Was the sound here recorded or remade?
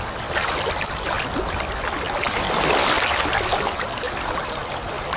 recorded